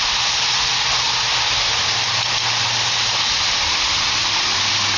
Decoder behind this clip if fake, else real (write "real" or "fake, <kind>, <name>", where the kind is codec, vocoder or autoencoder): real